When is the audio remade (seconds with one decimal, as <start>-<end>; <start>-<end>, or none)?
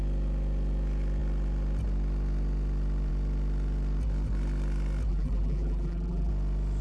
5.1-6.3